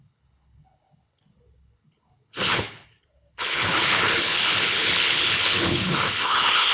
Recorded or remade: remade